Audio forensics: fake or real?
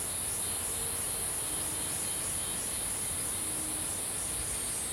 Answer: real